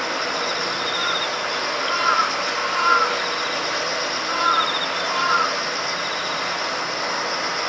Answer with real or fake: real